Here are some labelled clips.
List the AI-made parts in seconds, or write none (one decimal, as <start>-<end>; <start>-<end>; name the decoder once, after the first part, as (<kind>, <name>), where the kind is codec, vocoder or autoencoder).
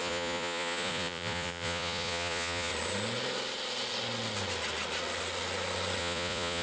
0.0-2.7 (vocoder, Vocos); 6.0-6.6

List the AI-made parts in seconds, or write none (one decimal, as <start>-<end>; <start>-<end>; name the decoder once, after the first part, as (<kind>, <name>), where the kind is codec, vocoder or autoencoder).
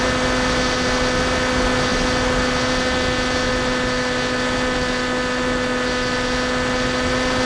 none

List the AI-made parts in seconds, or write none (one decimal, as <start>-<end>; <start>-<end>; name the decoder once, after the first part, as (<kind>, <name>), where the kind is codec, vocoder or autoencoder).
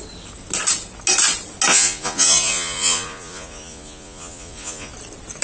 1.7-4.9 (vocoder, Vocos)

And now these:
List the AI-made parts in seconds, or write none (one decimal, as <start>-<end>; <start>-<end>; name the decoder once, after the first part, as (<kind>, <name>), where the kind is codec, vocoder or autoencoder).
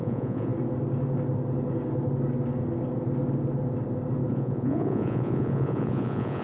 0.0-0.5 (vocoder, Vocos); 4.3-6.4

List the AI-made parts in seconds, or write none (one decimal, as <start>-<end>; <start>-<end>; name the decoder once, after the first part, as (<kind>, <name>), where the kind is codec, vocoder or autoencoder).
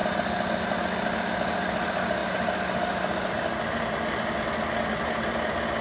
none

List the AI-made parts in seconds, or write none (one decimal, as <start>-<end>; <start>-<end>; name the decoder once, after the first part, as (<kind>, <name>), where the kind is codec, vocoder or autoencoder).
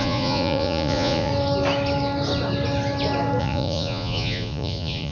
0.0-1.3 (vocoder, Vocos); 3.4-5.1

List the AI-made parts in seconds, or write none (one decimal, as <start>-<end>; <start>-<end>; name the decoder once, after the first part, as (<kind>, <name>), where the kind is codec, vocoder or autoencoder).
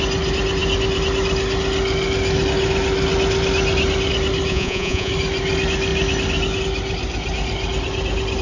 4.5-5.1 (vocoder, Vocos)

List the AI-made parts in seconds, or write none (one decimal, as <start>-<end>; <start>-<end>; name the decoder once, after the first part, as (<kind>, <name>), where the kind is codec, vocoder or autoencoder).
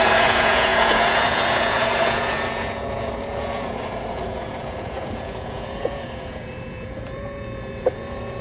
0.0-8.4 (vocoder, Vocos)